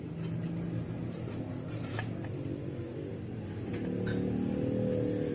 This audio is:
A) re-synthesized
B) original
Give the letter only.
B